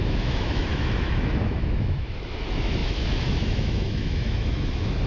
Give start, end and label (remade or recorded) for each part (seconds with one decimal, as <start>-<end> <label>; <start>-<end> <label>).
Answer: 0.0-5.1 remade